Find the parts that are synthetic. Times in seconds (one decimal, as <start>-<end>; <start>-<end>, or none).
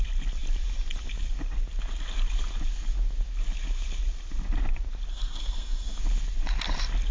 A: 5.1-6.0